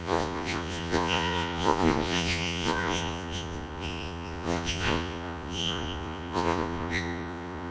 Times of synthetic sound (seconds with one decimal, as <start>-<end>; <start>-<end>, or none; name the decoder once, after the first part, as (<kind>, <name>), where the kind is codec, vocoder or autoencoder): 0.0-7.7 (vocoder, Vocos)